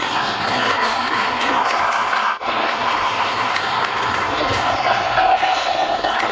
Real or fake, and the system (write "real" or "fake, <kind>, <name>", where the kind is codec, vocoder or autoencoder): fake, codec, SNAC